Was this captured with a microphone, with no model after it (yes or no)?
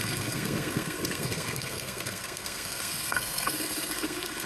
no